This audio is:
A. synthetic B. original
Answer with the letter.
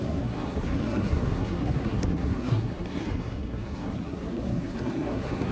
A